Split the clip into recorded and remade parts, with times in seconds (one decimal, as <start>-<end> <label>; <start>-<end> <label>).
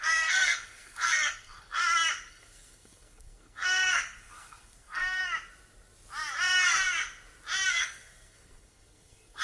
0.0-1.8 remade; 1.8-2.3 recorded; 2.3-5.2 remade; 5.2-7.7 recorded; 7.7-9.4 remade